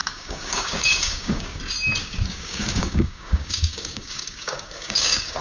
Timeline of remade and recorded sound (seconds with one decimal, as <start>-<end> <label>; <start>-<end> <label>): 0.0-1.6 remade; 1.6-2.0 recorded; 2.0-5.4 remade